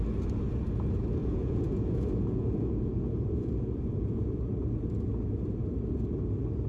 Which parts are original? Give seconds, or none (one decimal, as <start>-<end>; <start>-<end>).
0.0-1.2; 4.4-6.7